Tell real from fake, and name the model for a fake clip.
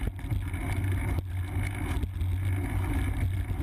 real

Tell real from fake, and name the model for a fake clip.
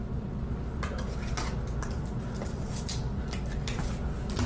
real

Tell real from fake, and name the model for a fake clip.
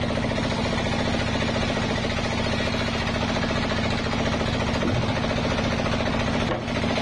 real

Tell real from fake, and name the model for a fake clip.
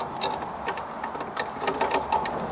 real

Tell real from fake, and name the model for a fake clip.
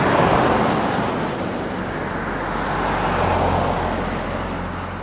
real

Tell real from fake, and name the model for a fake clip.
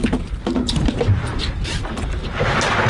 real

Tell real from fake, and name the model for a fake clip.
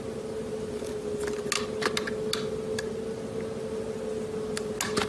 real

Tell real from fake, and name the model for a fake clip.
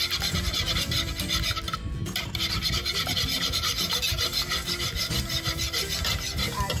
real